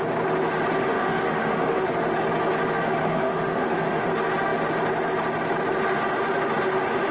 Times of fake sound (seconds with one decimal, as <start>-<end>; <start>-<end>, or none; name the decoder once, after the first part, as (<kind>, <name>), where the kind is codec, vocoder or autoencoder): 0.8-1.9 (autoencoder, DAC-VAE); 3.0-4.1